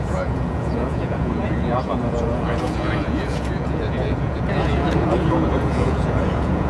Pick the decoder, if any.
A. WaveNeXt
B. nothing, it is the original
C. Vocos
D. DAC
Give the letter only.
C